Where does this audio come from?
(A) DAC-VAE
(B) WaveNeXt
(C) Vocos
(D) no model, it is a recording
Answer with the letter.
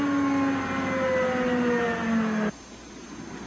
D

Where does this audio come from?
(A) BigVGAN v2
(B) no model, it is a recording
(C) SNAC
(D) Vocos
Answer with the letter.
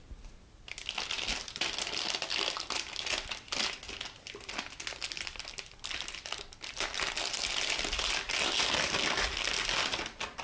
B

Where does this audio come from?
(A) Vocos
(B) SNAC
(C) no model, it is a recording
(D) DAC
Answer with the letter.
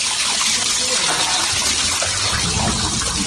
C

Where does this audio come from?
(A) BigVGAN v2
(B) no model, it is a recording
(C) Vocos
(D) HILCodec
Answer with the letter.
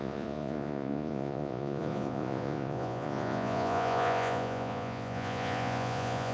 C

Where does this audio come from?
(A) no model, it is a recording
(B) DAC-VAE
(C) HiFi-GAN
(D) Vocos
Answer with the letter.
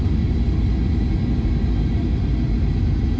A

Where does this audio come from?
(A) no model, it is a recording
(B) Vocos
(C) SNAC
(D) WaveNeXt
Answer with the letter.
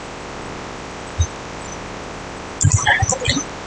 A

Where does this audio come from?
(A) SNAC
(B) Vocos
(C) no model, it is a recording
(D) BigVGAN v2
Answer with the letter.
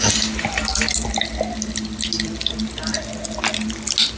C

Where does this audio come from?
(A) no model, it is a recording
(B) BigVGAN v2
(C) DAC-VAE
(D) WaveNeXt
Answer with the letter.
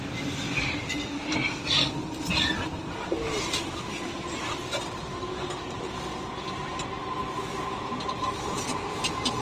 A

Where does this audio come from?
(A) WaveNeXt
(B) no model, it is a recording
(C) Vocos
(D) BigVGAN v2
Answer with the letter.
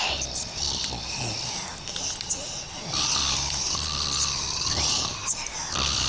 B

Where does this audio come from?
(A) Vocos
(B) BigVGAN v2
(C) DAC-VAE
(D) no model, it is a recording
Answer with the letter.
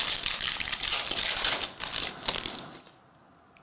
D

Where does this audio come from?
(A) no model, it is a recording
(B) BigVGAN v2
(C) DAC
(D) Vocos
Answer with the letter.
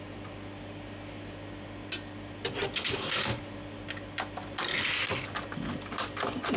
A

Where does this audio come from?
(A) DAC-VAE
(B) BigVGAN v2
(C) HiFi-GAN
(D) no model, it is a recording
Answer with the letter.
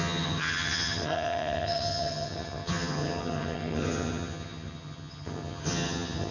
C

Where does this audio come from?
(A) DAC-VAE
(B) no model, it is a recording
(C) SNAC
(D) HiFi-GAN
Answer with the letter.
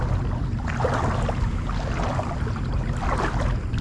B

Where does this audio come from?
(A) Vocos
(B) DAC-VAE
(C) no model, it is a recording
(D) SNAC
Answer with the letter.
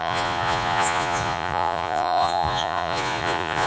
A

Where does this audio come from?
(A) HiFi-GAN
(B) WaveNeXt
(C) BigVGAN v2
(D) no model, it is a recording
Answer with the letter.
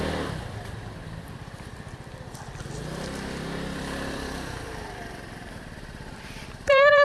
C